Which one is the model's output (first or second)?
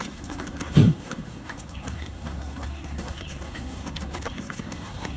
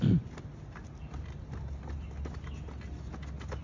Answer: first